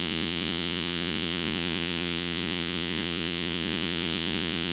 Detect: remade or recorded remade